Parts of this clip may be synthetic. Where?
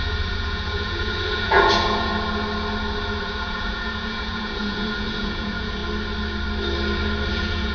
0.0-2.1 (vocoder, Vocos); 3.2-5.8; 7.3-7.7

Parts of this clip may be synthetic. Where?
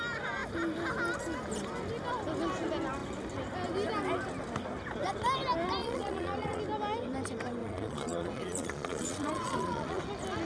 5.8-6.6 (vocoder, Vocos); 7.6-10.0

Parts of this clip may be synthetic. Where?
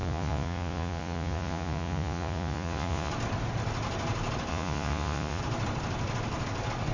0.0-3.1 (vocoder, Vocos); 4.5-5.4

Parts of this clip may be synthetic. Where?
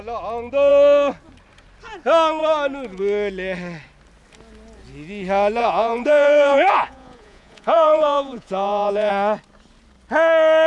5.6-9.1 (vocoder, Vocos)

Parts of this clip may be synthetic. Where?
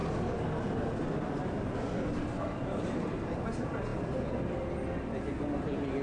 none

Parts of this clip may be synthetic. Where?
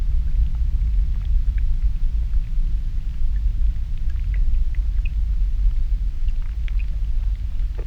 none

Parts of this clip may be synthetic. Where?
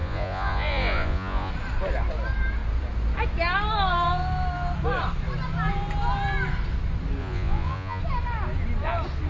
0.0-1.5 (vocoder, Vocos); 7.2-8.0